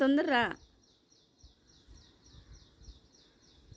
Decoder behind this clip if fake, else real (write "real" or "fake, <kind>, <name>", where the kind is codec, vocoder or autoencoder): real